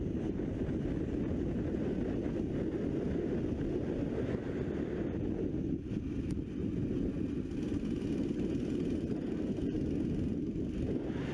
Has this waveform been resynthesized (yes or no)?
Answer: no